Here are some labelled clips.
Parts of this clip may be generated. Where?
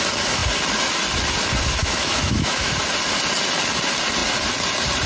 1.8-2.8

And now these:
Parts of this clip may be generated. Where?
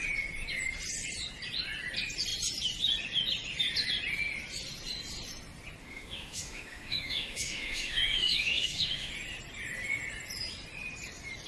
5.8-9.1